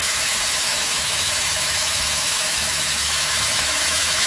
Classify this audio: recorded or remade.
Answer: remade